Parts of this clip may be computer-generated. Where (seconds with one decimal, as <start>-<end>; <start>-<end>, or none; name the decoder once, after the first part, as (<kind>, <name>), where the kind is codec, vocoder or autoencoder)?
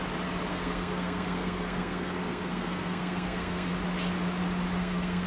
0.5-3.7 (codec, SNAC); 4.8-5.3